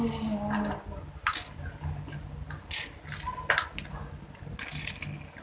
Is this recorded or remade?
recorded